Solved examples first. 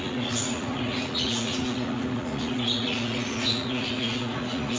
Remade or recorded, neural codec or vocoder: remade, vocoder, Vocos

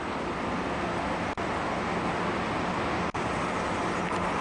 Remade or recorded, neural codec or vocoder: recorded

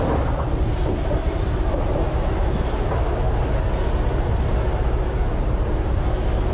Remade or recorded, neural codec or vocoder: recorded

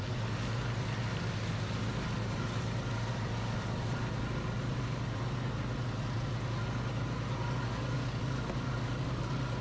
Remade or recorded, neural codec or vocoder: recorded